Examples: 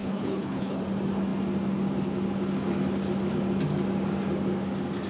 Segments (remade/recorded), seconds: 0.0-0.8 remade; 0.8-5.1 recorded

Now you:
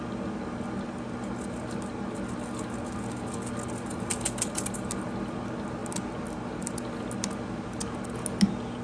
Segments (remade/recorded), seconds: 0.0-8.8 recorded

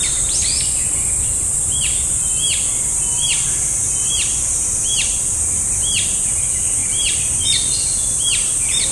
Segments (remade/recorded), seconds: 0.0-0.8 recorded; 0.8-5.4 remade; 5.4-6.8 recorded; 6.8-8.9 remade

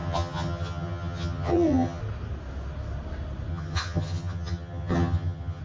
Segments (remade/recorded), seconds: 0.0-2.0 remade; 2.0-3.5 recorded; 3.5-5.6 remade

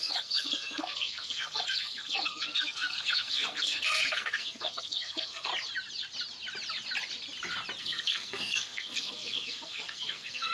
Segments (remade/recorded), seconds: 0.0-5.5 remade; 5.5-7.8 recorded; 7.8-10.5 remade

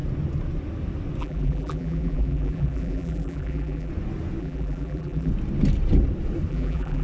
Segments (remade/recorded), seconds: 0.0-1.2 recorded; 1.2-3.9 remade; 3.9-4.4 recorded; 4.4-5.3 remade; 5.3-6.5 recorded; 6.5-7.0 remade